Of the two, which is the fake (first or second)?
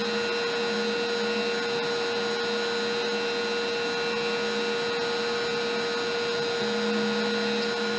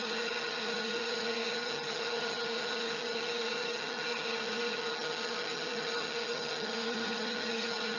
second